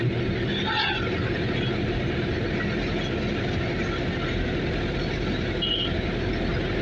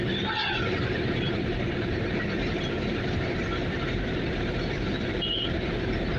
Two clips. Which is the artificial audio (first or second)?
second